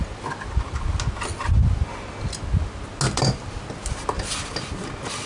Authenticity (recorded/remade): recorded